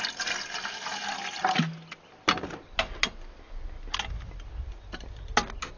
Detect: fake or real real